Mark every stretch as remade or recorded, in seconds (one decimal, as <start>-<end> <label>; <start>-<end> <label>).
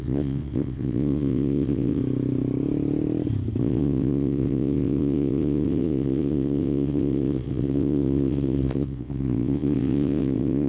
0.0-2.0 remade; 2.0-3.6 recorded; 3.6-10.7 remade